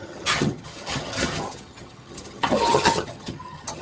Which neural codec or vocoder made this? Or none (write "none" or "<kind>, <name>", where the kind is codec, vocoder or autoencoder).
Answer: vocoder, HiFi-GAN